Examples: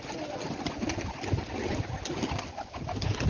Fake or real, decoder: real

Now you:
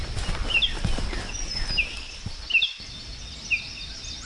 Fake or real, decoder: real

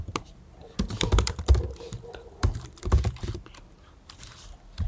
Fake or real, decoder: fake, vocoder, BigVGAN v2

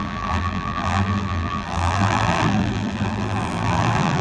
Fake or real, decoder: fake, vocoder, BigVGAN v2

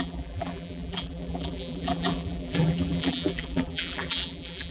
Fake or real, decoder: fake, vocoder, BigVGAN v2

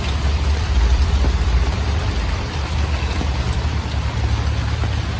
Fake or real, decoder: fake, vocoder, BigVGAN v2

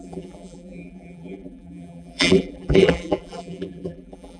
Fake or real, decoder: fake, vocoder, BigVGAN v2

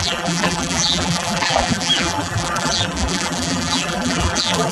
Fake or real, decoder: fake, vocoder, BigVGAN v2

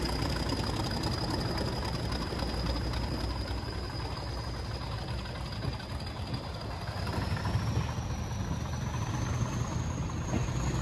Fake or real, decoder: real